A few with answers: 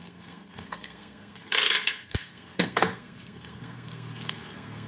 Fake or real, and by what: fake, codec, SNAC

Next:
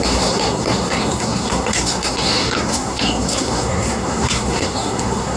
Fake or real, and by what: fake, codec, SNAC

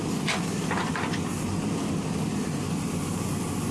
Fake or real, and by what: real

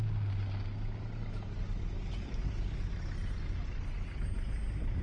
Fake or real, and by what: real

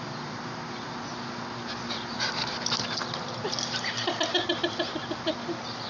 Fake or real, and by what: real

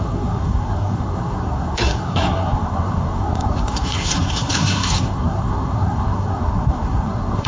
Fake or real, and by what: fake, codec, SNAC